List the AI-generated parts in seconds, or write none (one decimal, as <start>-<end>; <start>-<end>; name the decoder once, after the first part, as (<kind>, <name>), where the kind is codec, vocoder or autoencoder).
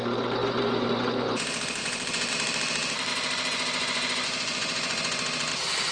0.4-1.4 (vocoder, Vocos); 1.8-2.3; 3.1-5.5